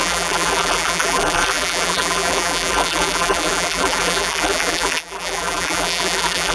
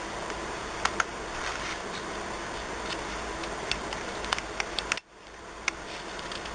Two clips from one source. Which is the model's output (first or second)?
first